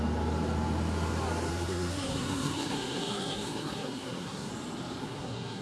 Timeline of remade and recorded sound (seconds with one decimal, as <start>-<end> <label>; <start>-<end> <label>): 0.0-1.5 recorded; 1.5-4.5 remade; 4.5-5.0 recorded; 5.0-5.6 remade